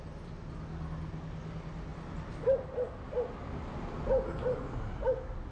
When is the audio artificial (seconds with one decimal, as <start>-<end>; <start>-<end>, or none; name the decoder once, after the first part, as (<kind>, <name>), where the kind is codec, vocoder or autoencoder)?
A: none